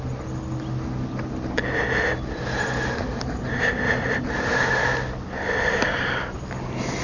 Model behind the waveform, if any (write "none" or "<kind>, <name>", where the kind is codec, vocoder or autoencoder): none